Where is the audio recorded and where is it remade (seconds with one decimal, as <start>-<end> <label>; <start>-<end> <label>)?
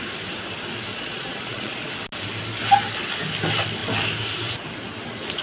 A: 0.0-0.9 recorded; 0.9-1.9 remade; 1.9-5.4 recorded